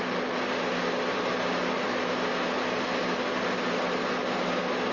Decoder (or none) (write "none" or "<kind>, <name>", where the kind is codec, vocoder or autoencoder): none